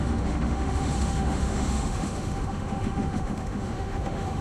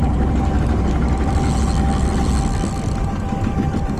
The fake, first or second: first